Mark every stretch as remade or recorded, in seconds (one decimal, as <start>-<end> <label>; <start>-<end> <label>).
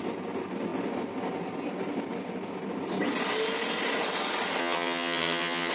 0.0-4.6 recorded; 4.6-5.7 remade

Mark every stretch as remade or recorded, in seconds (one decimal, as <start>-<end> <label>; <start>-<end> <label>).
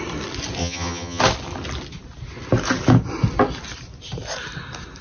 0.0-0.6 recorded; 0.6-1.2 remade; 1.2-5.0 recorded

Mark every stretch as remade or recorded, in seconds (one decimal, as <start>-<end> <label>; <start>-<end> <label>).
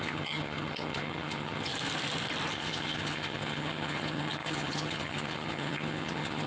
0.0-1.7 remade; 1.7-2.5 recorded; 2.5-6.5 remade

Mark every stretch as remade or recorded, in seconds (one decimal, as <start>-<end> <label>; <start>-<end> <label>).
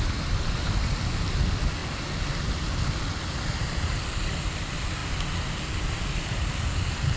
0.0-7.2 recorded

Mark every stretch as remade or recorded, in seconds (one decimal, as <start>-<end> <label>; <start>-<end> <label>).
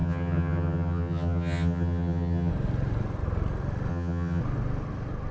0.0-2.5 remade; 2.5-3.9 recorded; 3.9-4.4 remade; 4.4-5.3 recorded